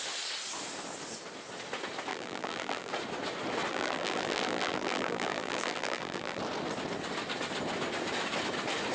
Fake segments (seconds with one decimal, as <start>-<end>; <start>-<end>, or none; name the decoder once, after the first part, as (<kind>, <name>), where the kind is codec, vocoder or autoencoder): 2.1-2.9 (vocoder, BigVGAN v2); 3.7-6.4